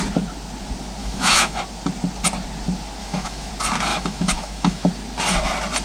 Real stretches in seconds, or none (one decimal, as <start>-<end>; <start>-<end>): 0.0-1.0; 1.6-3.0; 3.5-3.9; 4.9-5.8